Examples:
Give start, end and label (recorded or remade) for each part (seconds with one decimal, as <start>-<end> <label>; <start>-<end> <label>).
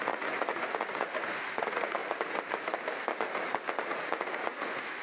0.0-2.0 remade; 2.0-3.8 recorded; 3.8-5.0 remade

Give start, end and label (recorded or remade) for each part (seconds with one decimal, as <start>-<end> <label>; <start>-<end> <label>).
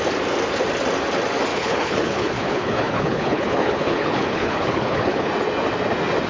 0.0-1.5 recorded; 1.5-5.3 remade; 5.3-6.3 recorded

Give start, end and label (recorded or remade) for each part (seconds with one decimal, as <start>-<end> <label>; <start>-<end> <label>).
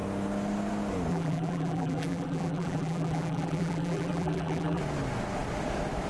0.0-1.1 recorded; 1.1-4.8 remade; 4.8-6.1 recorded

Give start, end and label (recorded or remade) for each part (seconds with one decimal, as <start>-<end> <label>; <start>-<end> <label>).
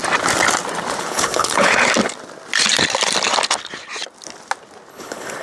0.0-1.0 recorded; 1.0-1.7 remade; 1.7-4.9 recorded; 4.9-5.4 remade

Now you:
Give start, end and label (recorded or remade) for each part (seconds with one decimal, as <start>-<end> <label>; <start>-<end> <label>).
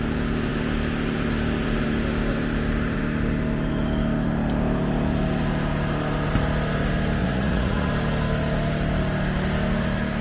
0.0-7.2 recorded; 7.2-7.9 remade; 7.9-10.2 recorded